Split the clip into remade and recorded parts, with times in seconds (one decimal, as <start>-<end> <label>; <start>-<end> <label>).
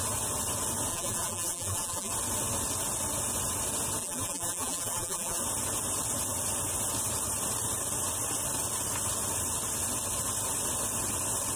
0.0-0.9 recorded; 0.9-2.1 remade; 2.1-4.0 recorded; 4.0-5.4 remade; 5.4-11.6 recorded